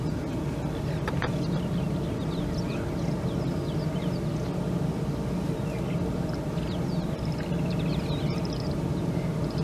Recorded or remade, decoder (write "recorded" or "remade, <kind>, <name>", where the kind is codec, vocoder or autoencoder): recorded